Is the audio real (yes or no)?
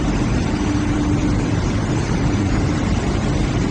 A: no